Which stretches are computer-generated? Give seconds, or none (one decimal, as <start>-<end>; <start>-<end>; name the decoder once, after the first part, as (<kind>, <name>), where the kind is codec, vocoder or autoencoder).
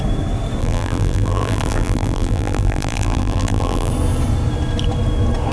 0.6-3.9 (vocoder, BigVGAN v2)